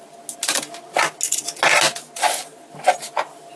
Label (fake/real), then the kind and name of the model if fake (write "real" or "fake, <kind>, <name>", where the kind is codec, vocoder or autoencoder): real